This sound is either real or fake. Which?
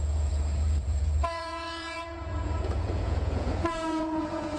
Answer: fake